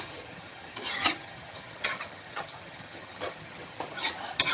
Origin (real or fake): fake